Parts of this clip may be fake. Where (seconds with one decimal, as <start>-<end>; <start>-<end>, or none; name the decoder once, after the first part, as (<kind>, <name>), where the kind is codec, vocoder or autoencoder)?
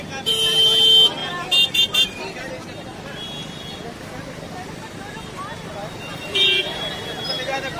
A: 1.2-2.5 (vocoder, BigVGAN v2); 6.1-6.9